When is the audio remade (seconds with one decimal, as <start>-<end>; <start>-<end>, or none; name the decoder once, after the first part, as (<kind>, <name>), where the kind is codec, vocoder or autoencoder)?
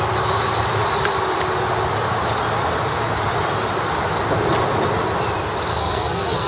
5.7-6.5 (codec, SNAC)